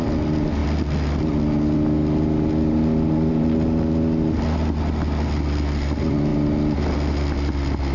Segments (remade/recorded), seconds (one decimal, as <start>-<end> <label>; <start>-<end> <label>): 0.0-7.9 recorded